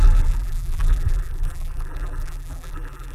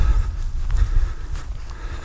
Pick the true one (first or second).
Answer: second